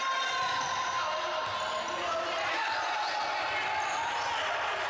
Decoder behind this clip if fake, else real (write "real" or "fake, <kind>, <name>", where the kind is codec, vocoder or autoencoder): real